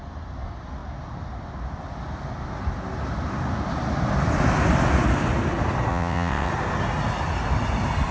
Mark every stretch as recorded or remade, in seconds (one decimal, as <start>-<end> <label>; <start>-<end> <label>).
0.0-5.9 recorded; 5.9-6.5 remade; 6.5-8.1 recorded